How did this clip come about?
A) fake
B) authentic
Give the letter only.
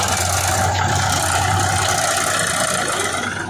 B